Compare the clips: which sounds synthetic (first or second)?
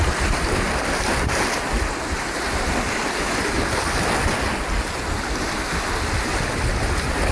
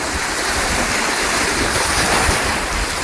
second